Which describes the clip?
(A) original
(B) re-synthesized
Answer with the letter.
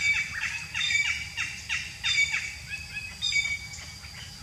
A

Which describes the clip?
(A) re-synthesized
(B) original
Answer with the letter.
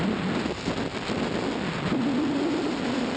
B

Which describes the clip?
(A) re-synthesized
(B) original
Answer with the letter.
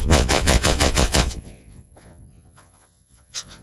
A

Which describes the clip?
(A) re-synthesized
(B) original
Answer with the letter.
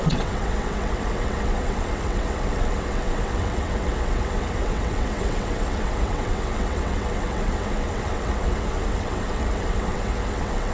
A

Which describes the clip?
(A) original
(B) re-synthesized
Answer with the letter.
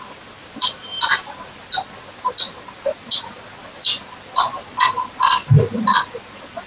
B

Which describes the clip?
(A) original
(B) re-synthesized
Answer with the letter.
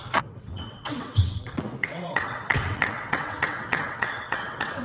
B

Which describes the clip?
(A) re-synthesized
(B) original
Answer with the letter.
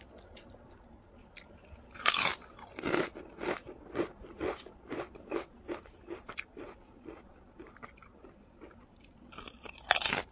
B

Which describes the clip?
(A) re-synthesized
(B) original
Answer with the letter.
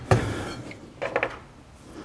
B